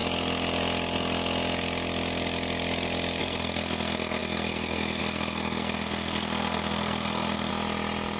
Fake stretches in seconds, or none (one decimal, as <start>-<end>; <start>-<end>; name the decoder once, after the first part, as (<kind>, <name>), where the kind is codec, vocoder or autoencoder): 3.2-7.5 (codec, SNAC)